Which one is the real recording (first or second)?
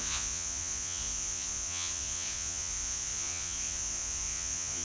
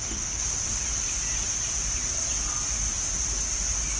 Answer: second